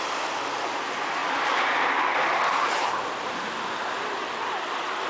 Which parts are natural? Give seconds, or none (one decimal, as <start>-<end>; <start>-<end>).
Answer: 0.0-5.1